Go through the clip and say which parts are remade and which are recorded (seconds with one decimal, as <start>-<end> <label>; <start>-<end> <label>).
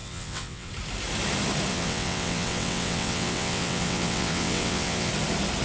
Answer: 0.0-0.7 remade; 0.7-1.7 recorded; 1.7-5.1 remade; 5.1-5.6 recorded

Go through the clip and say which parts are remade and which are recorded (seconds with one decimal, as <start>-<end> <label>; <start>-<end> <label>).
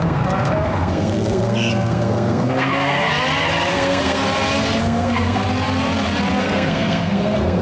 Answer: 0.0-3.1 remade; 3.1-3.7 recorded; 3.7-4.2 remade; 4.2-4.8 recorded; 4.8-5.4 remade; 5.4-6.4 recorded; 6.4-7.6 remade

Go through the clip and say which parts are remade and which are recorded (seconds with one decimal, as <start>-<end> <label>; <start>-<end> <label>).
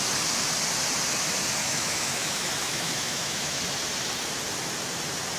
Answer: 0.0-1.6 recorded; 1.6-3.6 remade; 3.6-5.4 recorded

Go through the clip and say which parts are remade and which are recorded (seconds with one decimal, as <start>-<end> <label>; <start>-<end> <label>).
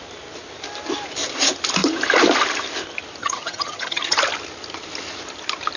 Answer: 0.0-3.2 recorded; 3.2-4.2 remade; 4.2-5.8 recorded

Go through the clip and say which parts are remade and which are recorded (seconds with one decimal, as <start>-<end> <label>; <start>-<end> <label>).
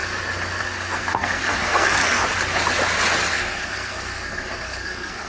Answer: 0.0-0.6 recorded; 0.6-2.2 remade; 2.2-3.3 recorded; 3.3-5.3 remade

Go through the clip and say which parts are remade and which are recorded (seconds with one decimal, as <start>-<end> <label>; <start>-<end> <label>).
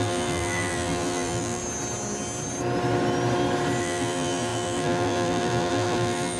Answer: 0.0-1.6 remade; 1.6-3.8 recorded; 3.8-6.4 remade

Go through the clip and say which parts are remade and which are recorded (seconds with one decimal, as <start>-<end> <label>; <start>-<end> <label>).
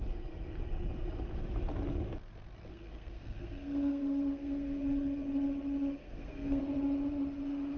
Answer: 0.0-2.7 recorded; 2.7-4.8 remade; 4.8-6.0 recorded; 6.0-6.6 remade; 6.6-7.8 recorded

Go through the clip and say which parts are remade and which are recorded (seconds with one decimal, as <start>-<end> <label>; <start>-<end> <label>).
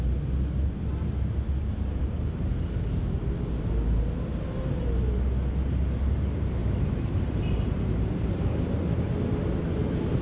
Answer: 0.0-6.6 recorded; 6.6-8.4 remade; 8.4-10.2 recorded